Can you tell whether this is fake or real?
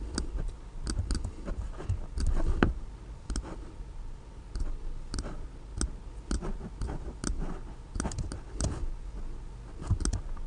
real